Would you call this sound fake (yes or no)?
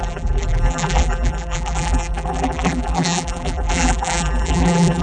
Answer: yes